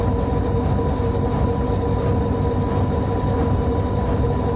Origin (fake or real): real